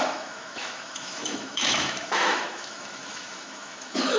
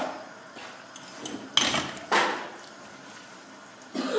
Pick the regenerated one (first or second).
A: first